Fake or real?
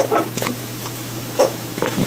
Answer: fake